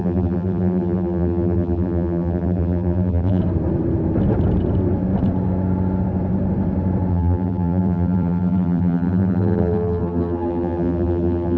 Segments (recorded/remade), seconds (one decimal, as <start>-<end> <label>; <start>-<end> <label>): 0.0-3.4 remade; 3.4-7.1 recorded; 7.1-11.6 remade